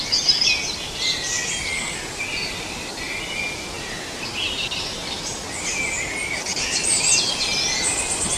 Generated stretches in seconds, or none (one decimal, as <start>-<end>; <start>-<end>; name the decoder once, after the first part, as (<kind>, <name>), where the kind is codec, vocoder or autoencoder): none